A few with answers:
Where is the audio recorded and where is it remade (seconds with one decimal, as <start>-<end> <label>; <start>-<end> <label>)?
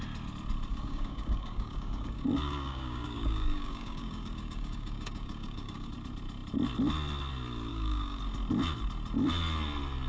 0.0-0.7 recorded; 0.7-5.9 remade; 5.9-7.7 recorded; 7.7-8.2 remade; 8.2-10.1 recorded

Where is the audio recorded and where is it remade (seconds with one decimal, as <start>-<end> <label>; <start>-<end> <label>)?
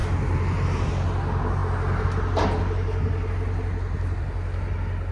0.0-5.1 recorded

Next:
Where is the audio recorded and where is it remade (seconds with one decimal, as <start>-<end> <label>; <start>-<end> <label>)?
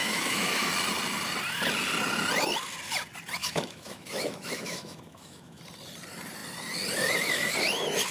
0.0-0.7 remade; 0.7-3.4 recorded; 3.4-5.6 remade; 5.6-8.1 recorded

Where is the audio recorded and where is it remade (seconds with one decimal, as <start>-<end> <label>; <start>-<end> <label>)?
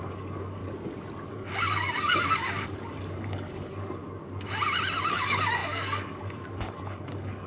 0.0-0.6 remade; 0.6-1.3 recorded; 1.3-4.0 remade; 4.0-5.1 recorded; 5.1-7.5 remade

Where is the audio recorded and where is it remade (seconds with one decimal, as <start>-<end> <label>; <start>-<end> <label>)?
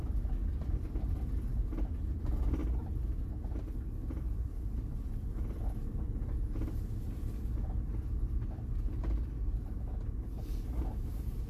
0.0-11.5 recorded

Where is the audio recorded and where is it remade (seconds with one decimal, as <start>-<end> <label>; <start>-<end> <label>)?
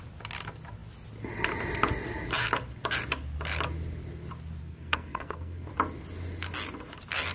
0.0-4.6 recorded; 4.6-5.7 remade; 5.7-7.3 recorded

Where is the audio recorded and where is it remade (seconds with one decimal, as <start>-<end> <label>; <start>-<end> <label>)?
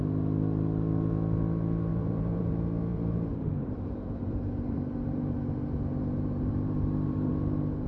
0.0-1.9 recorded; 1.9-2.5 remade; 2.5-2.9 recorded; 2.9-7.3 remade; 7.3-7.9 recorded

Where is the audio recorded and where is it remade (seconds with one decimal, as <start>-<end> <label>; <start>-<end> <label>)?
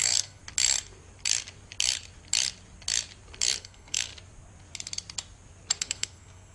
0.0-0.4 remade; 0.4-3.6 recorded; 3.6-4.1 remade; 4.1-5.8 recorded; 5.8-6.5 remade